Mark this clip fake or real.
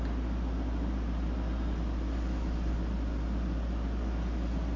real